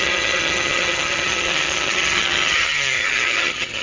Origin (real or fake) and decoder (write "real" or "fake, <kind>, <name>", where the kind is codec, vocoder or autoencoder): fake, vocoder, HiFi-GAN